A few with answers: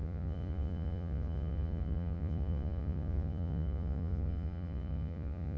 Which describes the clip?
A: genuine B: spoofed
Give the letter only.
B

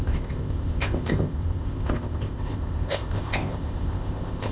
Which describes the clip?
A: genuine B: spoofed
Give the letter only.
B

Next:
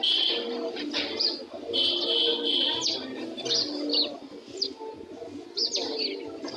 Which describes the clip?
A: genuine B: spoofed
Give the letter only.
A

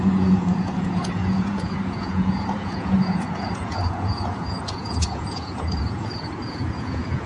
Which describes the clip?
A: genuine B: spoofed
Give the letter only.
B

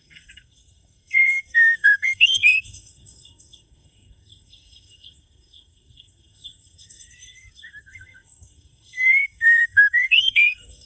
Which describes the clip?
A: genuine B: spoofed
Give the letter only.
B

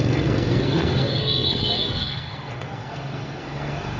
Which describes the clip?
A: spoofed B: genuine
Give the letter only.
A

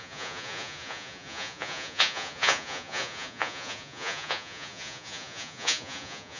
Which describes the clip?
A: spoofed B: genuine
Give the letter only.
A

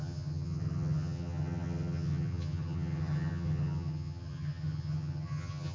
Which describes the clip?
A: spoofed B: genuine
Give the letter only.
A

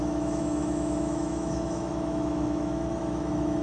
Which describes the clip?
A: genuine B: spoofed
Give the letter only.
B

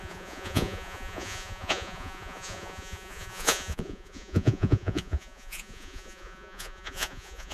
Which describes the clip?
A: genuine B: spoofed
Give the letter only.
B